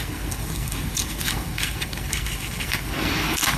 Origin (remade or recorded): remade